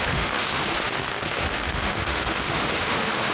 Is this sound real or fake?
fake